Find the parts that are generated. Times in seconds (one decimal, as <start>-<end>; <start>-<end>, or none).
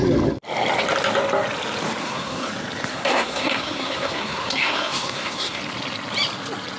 2.0-2.5; 2.9-5.6